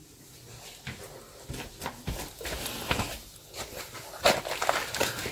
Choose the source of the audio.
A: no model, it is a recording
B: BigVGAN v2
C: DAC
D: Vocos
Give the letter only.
A